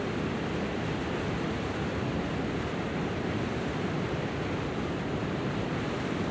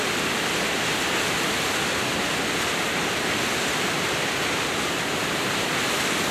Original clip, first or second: second